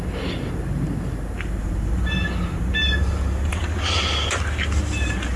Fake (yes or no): no